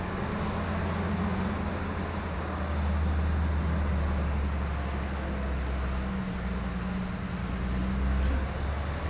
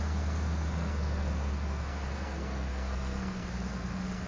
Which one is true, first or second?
first